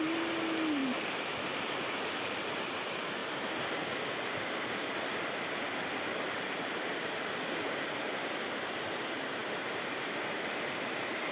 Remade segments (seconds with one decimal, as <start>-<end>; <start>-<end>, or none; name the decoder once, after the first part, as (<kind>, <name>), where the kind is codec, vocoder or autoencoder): none